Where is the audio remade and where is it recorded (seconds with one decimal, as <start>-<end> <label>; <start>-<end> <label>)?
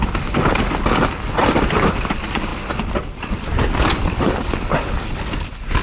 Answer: 0.0-5.8 recorded